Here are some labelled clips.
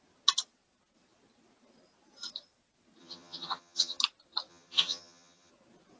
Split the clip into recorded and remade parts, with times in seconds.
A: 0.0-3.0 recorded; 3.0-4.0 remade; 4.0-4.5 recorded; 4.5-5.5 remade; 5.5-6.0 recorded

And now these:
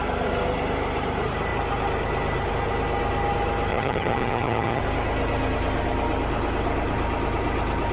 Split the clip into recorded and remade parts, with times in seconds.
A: 0.0-3.7 recorded; 3.7-4.8 remade; 4.8-7.9 recorded

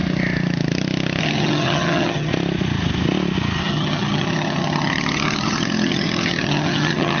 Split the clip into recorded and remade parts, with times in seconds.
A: 0.0-1.2 recorded; 1.2-2.3 remade; 2.3-3.6 recorded; 3.6-7.2 remade

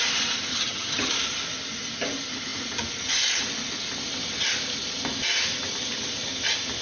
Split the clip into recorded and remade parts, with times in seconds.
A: 0.0-0.5 recorded; 0.5-1.1 remade; 1.1-6.8 recorded

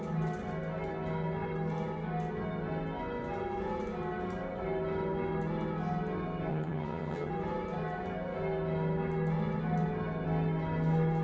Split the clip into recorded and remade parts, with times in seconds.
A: 0.0-6.5 recorded; 6.5-7.3 remade; 7.3-11.2 recorded

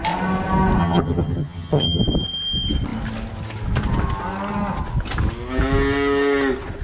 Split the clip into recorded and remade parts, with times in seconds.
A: 0.0-0.8 recorded; 0.8-2.0 remade; 2.0-6.8 recorded

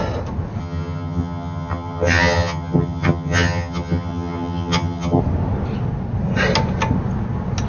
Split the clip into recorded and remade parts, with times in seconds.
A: 0.0-0.6 recorded; 0.6-5.2 remade; 5.2-7.7 recorded

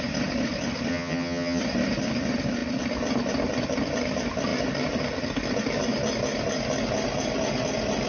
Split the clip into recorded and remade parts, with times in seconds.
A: 0.0-0.9 recorded; 0.9-1.6 remade; 1.6-8.1 recorded